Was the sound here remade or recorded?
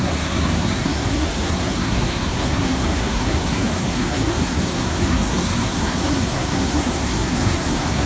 remade